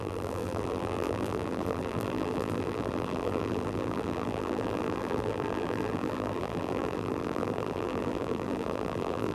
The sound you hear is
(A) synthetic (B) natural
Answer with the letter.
A